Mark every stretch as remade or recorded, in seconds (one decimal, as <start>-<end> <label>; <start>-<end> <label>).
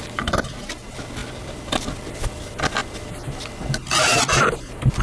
0.0-5.0 recorded